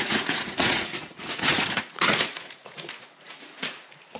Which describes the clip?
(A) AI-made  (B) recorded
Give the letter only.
A